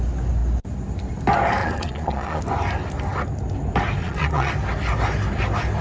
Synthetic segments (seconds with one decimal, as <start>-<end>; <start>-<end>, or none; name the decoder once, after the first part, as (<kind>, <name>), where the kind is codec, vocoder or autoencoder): 1.6-2.4 (vocoder, Vocos); 4.0-4.5